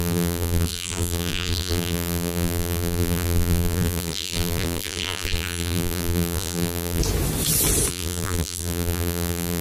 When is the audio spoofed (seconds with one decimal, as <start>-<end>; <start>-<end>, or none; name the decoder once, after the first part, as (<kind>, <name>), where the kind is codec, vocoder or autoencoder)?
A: 0.0-7.0 (vocoder, BigVGAN v2); 7.9-9.6